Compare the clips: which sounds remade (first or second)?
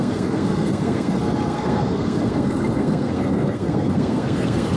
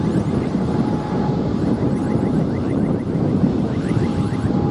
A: first